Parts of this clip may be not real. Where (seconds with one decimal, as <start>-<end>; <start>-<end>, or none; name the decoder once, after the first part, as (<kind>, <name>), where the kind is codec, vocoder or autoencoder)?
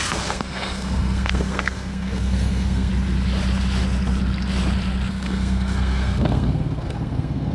0.0-2.9 (codec, SNAC); 5.1-7.5